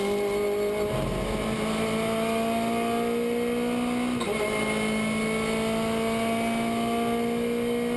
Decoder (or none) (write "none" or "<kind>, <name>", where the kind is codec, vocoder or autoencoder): none